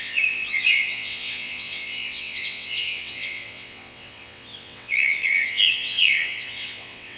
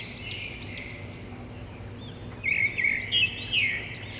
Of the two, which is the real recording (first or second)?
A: second